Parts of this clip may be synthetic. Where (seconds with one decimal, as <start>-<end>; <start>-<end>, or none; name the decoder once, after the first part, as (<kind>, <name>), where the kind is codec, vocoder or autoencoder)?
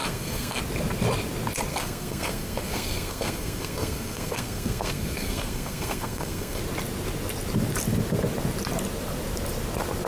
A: 0.0-0.6 (codec, SNAC); 1.7-6.6